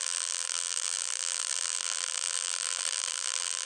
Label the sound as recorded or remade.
remade